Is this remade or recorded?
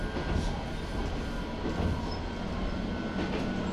recorded